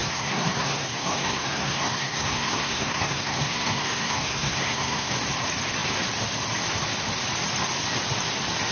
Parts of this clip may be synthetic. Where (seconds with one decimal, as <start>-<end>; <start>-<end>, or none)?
0.0-5.1